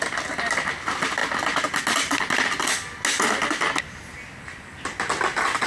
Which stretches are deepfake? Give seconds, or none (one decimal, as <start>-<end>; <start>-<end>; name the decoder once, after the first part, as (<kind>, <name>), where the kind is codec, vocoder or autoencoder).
none